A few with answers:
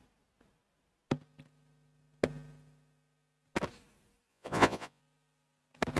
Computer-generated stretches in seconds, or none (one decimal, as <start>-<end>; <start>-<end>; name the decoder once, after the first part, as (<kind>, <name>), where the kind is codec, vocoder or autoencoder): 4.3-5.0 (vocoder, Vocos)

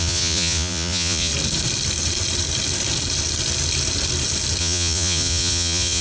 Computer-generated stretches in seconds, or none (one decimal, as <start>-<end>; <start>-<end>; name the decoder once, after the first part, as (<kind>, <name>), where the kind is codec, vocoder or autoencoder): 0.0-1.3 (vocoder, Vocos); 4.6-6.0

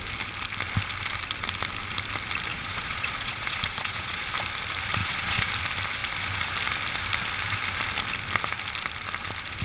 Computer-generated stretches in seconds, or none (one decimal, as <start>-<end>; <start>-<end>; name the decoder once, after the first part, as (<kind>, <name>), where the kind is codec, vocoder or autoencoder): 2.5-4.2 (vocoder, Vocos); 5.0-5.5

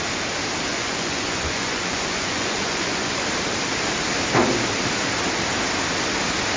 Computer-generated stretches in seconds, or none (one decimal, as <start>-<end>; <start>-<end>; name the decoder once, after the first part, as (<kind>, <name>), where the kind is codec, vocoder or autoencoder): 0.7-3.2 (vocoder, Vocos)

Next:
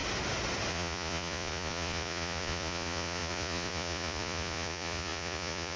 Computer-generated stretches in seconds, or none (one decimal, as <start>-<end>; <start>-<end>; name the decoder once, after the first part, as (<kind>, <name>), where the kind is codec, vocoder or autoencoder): 0.7-5.8 (vocoder, Vocos)